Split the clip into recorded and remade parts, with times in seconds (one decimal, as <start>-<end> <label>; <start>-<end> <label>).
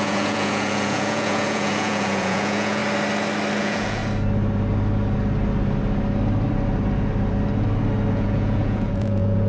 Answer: 0.0-2.8 remade; 2.8-3.6 recorded; 3.6-4.0 remade; 4.0-8.1 recorded; 8.1-9.5 remade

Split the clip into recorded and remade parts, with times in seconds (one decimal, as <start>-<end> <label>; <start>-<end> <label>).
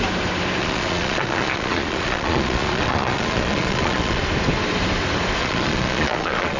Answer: 0.0-0.6 recorded; 0.6-4.2 remade; 4.2-5.4 recorded; 5.4-6.6 remade